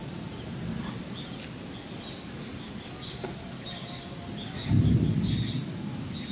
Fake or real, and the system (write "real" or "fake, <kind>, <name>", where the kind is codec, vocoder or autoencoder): real